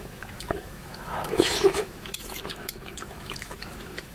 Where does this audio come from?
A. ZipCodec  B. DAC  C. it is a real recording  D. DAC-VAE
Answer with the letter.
D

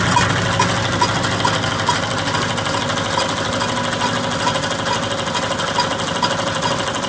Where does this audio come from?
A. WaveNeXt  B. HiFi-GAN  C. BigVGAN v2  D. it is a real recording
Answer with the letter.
D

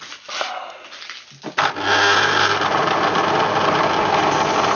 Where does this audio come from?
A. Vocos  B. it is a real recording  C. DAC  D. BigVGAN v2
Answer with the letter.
B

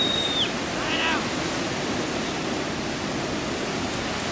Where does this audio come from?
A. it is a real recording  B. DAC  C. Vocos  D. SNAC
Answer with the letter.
A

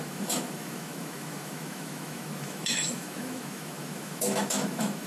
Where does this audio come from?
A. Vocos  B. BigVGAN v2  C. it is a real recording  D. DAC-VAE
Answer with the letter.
D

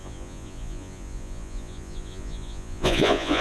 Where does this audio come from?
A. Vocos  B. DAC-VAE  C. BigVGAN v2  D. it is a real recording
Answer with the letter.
A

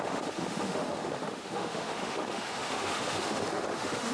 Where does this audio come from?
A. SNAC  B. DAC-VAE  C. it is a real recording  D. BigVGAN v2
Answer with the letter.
B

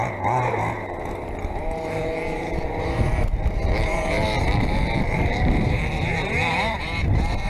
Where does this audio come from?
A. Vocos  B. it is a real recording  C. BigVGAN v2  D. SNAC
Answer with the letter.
C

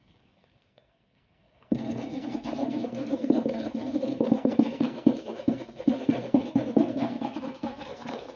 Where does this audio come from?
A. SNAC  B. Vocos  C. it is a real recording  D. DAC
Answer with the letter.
A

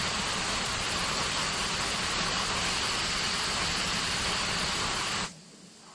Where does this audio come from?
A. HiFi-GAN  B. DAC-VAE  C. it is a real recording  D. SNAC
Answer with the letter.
C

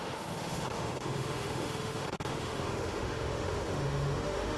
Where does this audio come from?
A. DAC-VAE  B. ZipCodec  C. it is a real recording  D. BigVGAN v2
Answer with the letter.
A